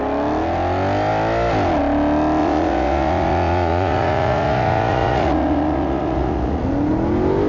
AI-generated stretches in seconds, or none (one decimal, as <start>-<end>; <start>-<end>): 2.4-6.6